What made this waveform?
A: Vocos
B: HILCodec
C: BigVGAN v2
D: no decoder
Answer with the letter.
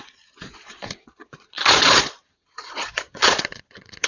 A